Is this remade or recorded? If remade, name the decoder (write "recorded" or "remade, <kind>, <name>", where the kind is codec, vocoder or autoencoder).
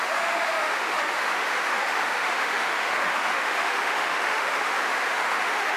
remade, autoencoder, DAC-VAE